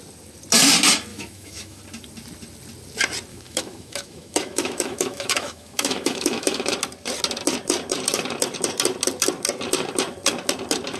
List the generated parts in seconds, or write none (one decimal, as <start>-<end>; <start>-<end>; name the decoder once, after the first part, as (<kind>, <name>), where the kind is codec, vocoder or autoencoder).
1.1-1.8 (autoencoder, DAC-VAE); 3.3-6.7

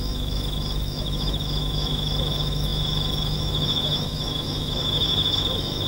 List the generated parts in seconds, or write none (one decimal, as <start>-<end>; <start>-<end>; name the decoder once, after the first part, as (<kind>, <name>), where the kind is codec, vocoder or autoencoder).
0.0-5.9 (autoencoder, DAC-VAE)

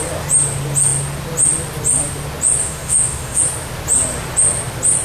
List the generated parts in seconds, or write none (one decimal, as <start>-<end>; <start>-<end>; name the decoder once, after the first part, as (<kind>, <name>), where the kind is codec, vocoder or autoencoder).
2.6-3.4 (autoencoder, DAC-VAE)

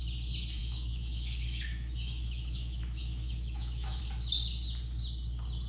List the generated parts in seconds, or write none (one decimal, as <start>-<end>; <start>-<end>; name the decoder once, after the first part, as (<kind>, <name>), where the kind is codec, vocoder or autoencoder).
0.6-4.0 (autoencoder, DAC-VAE)

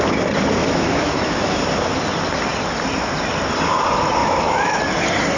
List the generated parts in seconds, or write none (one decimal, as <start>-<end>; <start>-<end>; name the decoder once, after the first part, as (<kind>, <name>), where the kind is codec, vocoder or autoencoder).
0.6-1.6 (autoencoder, DAC-VAE); 4.2-4.8